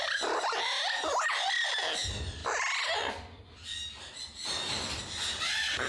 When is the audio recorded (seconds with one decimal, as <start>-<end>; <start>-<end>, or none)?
0.0-5.9